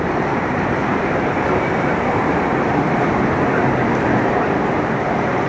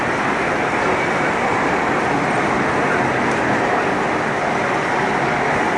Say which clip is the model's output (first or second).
first